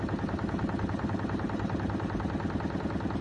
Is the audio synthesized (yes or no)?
no